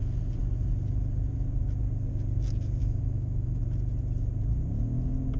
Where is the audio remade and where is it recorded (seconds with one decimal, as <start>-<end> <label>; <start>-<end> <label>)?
0.0-2.8 recorded; 2.8-3.6 remade; 3.6-5.4 recorded